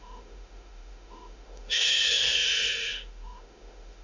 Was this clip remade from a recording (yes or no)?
yes